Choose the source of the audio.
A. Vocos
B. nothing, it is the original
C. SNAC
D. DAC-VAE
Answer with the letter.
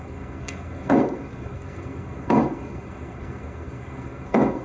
C